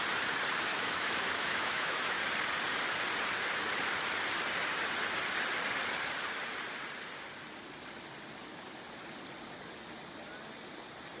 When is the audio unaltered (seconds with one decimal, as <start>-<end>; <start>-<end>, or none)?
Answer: 0.0-0.7; 2.2-11.2